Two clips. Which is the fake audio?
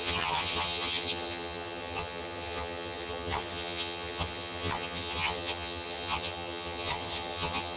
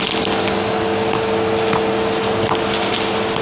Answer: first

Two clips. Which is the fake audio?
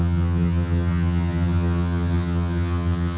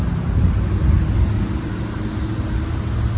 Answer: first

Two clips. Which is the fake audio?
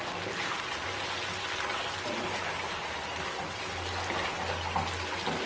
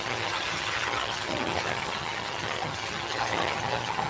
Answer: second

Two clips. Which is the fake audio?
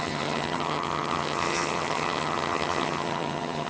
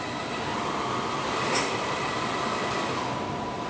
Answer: first